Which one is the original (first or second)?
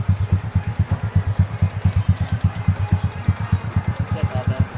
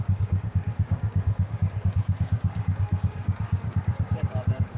first